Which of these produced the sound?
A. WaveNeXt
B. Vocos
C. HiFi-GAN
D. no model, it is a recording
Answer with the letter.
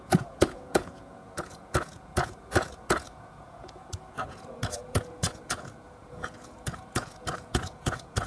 B